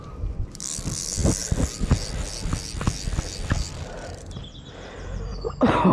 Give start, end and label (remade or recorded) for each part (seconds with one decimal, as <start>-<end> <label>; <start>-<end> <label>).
0.0-5.9 recorded